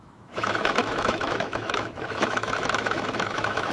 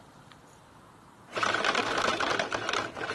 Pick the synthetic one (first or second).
first